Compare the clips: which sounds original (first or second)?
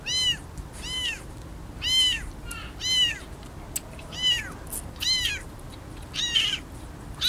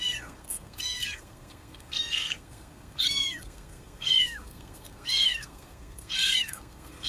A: first